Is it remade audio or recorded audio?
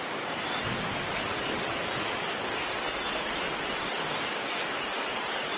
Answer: recorded